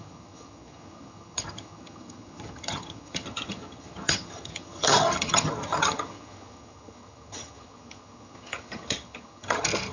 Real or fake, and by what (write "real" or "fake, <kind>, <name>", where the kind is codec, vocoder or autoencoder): fake, vocoder, HiFi-GAN